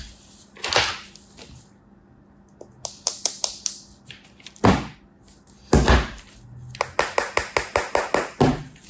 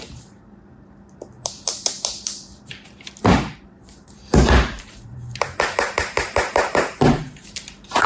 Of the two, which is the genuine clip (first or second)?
first